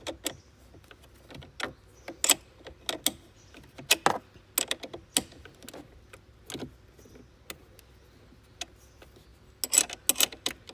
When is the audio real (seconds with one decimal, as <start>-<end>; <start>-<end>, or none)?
0.0-10.7